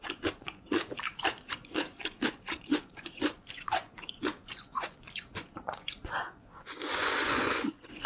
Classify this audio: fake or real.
fake